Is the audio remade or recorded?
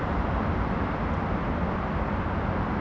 recorded